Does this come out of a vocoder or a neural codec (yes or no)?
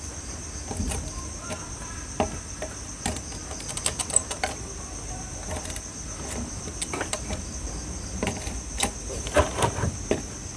no